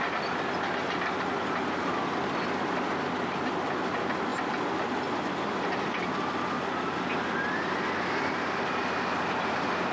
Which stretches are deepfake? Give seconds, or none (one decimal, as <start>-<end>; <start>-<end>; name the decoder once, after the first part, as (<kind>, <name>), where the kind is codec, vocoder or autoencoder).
none